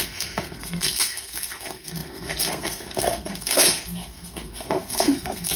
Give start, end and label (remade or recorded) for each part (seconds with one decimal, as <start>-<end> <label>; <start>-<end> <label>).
0.0-5.6 remade